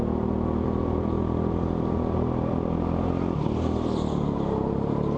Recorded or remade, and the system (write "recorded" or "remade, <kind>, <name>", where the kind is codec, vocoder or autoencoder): recorded